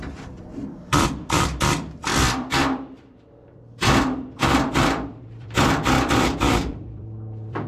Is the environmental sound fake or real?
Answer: fake